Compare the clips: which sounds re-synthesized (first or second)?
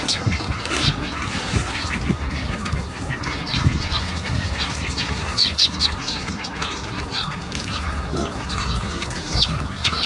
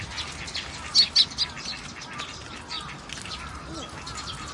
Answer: first